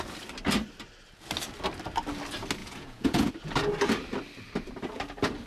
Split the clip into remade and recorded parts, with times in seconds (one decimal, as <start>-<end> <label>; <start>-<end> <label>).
0.0-2.6 recorded; 2.6-3.3 remade; 3.3-5.5 recorded